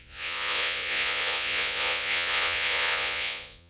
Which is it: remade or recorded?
remade